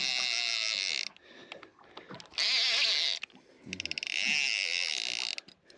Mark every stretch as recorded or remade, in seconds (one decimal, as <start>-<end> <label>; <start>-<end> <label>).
0.0-5.8 recorded